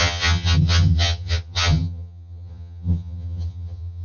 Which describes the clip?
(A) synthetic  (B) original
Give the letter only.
A